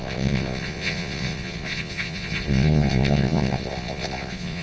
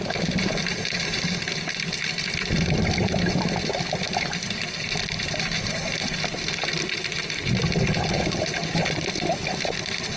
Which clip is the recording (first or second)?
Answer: second